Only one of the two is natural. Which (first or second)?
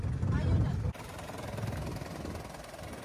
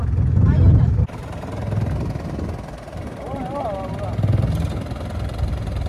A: second